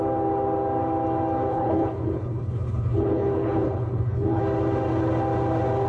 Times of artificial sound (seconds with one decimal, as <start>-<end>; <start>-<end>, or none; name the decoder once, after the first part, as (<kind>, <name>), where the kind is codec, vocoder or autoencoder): 1.5-4.4 (codec, HILCodec)